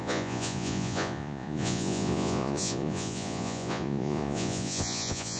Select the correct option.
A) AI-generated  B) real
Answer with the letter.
A